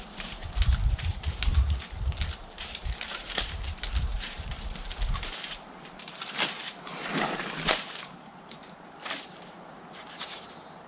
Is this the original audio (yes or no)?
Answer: no